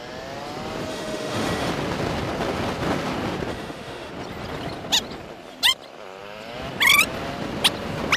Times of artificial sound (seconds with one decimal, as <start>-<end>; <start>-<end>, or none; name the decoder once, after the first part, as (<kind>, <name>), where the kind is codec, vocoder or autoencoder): 0.9-1.7 (autoencoder, DAC-VAE); 3.5-4.1

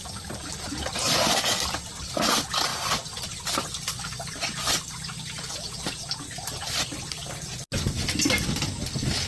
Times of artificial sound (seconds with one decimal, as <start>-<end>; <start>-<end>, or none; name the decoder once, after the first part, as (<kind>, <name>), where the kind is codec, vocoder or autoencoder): none

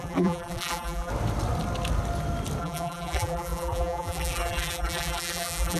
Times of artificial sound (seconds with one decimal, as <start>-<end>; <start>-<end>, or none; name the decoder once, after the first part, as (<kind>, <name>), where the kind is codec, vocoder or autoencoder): 0.0-1.1 (vocoder, BigVGAN v2); 2.6-5.8

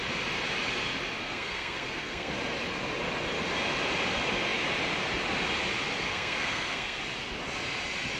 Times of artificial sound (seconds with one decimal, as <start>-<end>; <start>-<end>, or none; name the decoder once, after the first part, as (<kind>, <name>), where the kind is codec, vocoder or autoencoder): 1.2-2.3 (codec, SNAC); 6.1-7.0

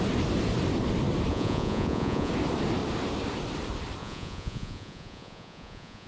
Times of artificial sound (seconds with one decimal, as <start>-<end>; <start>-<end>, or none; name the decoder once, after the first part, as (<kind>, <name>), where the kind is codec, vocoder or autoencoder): 1.3-2.3 (vocoder, Vocos); 4.0-6.1

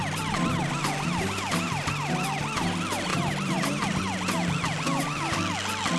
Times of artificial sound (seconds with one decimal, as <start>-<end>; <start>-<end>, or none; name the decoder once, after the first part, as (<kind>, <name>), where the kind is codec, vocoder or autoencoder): 3.1-4.0 (vocoder, BigVGAN v2)